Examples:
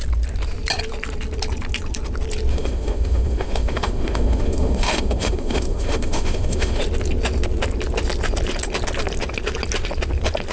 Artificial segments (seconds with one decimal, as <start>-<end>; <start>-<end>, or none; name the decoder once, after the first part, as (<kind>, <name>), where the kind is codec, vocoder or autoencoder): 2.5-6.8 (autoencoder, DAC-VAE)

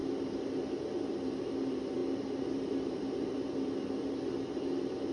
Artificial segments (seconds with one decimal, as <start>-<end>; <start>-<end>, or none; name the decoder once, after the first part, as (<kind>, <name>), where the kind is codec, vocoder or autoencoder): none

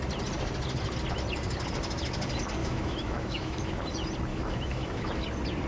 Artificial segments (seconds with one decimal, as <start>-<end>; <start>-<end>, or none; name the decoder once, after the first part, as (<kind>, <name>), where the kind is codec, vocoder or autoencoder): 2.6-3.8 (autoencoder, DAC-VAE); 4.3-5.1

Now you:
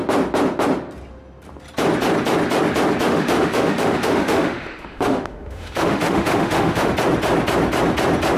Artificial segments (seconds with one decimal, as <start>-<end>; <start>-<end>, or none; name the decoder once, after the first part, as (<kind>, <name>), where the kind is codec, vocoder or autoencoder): 3.1-6.9 (autoencoder, DAC-VAE)

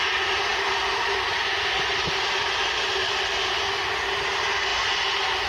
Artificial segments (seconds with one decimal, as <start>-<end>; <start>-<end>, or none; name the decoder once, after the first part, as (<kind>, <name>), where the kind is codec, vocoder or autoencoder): none

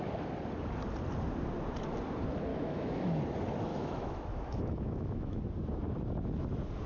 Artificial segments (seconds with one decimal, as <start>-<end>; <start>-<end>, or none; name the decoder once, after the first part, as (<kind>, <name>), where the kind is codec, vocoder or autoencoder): 2.5-3.2 (autoencoder, DAC-VAE); 3.7-5.4

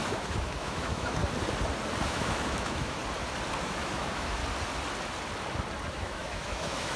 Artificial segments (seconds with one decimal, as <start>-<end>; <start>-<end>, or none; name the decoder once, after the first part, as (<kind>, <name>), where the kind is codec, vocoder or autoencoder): 0.0-1.2 (autoencoder, DAC-VAE); 2.1-3.0; 3.6-4.4; 5.9-7.0

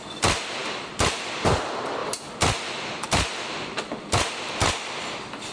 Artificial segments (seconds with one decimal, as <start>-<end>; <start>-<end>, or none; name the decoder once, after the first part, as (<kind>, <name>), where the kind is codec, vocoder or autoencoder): none